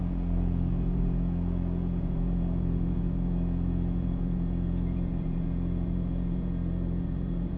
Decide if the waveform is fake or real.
fake